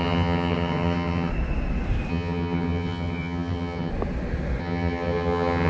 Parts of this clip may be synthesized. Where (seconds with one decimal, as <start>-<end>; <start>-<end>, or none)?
0.0-1.3; 2.1-3.9; 4.6-5.7